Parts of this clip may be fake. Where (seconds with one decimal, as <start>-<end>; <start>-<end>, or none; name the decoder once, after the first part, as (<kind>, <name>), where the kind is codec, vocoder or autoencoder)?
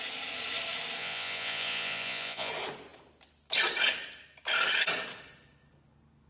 1.0-2.5 (vocoder, Vocos)